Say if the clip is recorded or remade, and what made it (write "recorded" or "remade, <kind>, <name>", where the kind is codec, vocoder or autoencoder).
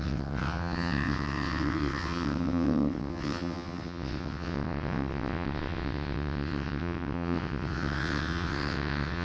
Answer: remade, vocoder, WaveNeXt